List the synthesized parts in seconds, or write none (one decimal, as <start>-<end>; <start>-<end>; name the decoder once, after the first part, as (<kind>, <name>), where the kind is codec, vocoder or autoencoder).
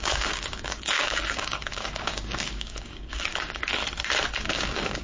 0.0-3.8 (codec, DAC); 4.4-5.0